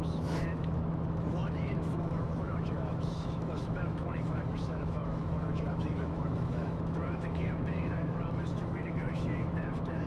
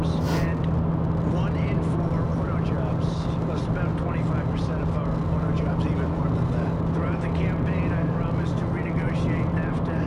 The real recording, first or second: second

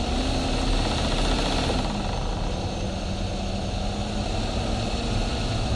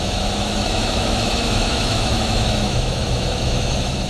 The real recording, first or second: first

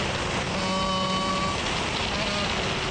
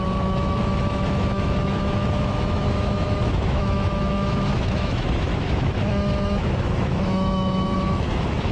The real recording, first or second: first